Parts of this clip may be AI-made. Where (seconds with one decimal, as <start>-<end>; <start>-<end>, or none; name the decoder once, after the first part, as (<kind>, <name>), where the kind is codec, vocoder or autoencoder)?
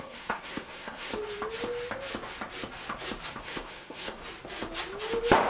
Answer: 0.0-1.1 (codec, SNAC); 3.3-4.2